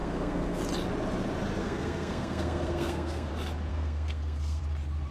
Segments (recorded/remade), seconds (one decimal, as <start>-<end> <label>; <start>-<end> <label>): 0.0-0.6 remade; 0.6-1.6 recorded; 1.6-3.3 remade; 3.3-3.7 recorded; 3.7-4.6 remade; 4.6-5.1 recorded